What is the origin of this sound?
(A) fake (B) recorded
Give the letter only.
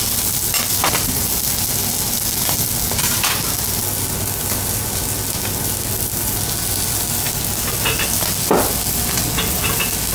B